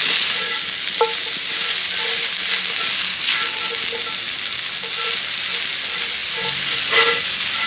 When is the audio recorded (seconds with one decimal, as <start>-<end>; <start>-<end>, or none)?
0.0-7.7